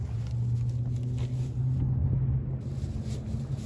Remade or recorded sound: recorded